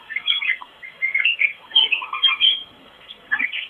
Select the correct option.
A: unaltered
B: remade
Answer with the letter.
B